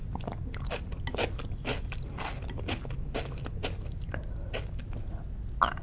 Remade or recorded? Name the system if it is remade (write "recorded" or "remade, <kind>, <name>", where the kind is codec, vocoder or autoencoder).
recorded